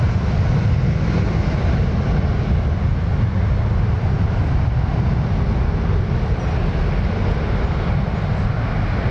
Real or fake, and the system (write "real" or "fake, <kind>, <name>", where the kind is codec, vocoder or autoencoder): real